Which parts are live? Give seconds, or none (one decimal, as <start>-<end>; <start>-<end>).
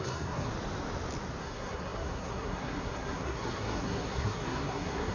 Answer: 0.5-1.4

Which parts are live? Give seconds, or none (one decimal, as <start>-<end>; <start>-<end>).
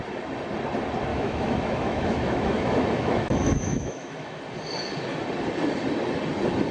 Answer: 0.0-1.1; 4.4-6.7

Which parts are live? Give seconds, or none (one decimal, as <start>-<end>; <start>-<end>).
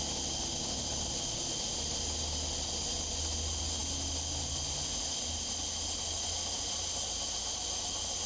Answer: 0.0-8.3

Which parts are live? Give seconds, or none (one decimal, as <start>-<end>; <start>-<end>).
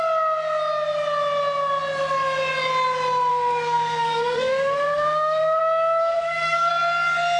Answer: 0.0-3.3; 5.6-6.0; 6.7-7.4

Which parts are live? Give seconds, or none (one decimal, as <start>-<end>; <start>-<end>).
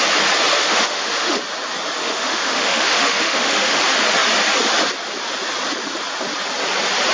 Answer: 0.0-0.5; 1.4-2.0; 3.8-7.1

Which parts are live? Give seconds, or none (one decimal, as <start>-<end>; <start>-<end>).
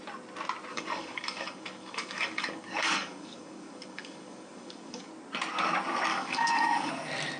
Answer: 0.0-0.7; 5.1-6.1; 6.9-7.4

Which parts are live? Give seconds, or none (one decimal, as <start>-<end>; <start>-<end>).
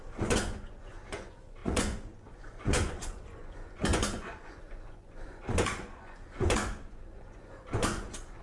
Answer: none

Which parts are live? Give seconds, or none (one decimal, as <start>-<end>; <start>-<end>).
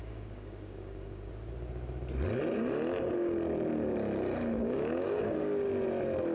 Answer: 1.3-4.6; 5.2-6.3